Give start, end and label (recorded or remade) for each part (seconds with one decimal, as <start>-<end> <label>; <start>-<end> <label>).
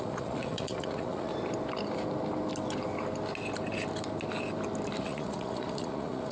0.0-1.3 remade; 1.3-5.0 recorded; 5.0-6.3 remade